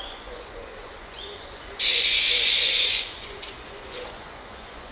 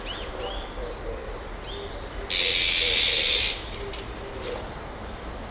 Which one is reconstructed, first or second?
first